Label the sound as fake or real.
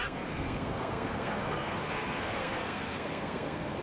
fake